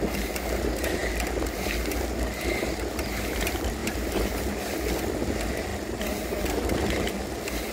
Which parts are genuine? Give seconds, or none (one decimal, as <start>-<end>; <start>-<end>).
0.0-3.8; 4.5-7.7